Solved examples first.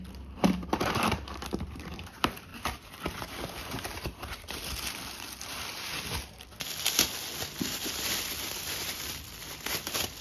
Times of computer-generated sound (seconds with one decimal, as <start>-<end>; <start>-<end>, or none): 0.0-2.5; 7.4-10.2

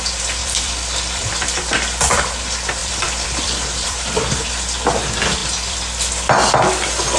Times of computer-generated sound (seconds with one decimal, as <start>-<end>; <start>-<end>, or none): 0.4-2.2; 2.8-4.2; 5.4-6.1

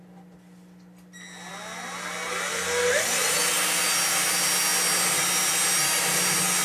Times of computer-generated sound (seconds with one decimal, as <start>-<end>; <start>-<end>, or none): none

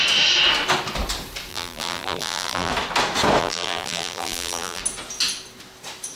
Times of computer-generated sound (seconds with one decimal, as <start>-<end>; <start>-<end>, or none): 1.5-2.7; 3.4-4.8

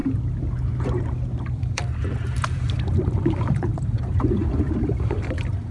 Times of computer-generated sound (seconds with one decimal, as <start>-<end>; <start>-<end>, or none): 1.5-5.7

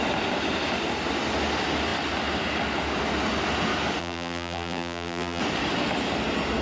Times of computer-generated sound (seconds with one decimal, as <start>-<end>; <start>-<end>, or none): 4.0-5.4

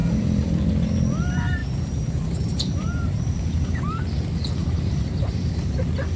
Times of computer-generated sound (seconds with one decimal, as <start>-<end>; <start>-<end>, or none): 0.0-0.7; 1.6-3.8; 4.6-5.7